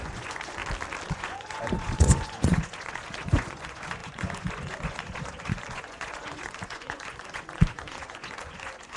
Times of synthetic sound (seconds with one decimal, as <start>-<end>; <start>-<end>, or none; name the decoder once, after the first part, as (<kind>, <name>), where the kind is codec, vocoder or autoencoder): 0.0-0.6 (vocoder, Vocos); 1.1-9.0